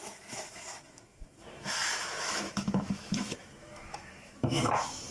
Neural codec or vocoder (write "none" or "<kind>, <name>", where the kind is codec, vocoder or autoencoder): autoencoder, DAC-VAE